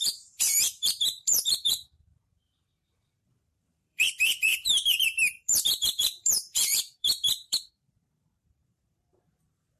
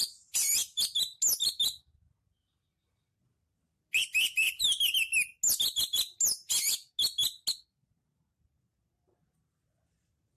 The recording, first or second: second